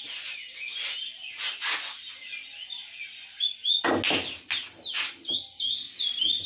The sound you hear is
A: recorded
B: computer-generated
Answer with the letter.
A